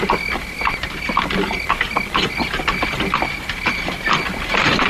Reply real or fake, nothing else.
real